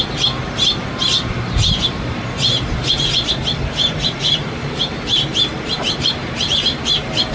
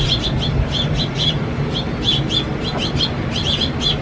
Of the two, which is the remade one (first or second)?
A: first